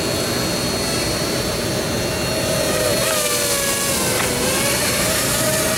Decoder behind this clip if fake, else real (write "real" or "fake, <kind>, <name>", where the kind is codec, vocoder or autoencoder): real